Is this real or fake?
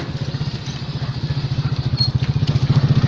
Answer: real